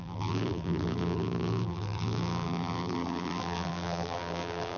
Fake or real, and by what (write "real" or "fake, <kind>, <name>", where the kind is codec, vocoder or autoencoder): fake, vocoder, BigVGAN v2